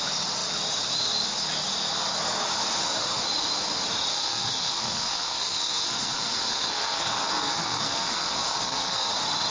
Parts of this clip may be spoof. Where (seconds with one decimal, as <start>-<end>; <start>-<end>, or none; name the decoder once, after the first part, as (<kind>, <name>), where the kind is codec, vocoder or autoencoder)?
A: 4.1-9.1 (codec, SNAC)